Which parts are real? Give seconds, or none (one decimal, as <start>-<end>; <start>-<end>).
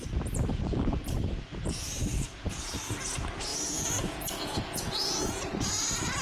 0.0-0.5; 1.0-2.1; 2.9-3.5; 5.5-6.2